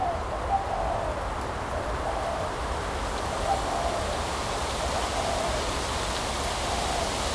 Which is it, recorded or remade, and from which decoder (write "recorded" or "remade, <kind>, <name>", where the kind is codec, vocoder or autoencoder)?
recorded